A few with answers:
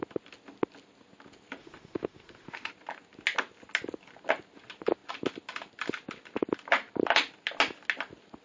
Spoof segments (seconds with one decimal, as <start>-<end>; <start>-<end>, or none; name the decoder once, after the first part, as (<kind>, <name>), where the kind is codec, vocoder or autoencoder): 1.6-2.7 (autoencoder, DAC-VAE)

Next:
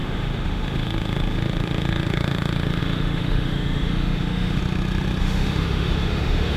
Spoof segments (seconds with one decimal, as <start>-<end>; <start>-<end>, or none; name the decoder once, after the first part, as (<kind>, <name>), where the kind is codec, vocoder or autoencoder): 0.0-4.6 (autoencoder, DAC-VAE); 5.2-6.6

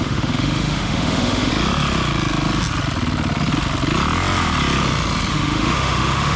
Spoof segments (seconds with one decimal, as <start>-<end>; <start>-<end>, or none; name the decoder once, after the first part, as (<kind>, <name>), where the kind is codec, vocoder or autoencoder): 0.0-1.5 (autoencoder, DAC-VAE); 5.3-6.4

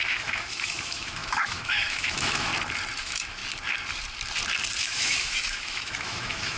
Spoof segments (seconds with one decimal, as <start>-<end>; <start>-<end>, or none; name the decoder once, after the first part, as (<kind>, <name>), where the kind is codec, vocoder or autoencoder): 0.0-2.5 (autoencoder, DAC-VAE); 3.0-3.4; 4.8-6.6

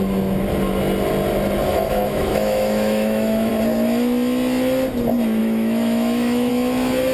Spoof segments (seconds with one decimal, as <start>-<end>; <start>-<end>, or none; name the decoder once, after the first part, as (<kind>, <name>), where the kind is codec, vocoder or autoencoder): 1.7-3.5 (autoencoder, DAC-VAE); 5.4-6.5

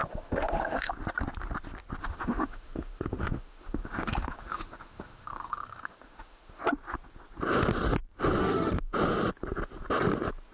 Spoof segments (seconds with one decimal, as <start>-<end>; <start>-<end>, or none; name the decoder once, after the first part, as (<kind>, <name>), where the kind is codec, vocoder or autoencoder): 0.0-0.9 (autoencoder, DAC-VAE); 2.0-6.6; 8.4-8.9